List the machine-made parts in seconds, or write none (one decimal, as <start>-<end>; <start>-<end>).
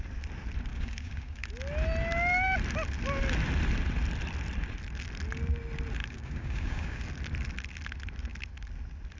0.7-1.5; 6.0-7.0